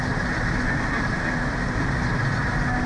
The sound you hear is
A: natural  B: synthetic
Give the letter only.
A